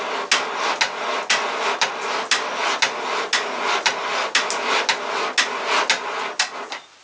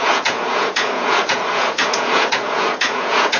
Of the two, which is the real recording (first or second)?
first